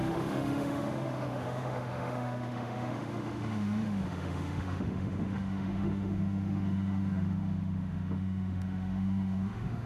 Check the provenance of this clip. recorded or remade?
remade